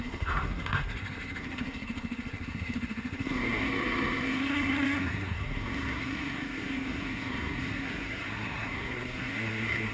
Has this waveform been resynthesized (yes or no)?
yes